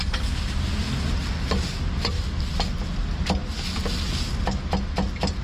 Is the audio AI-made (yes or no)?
no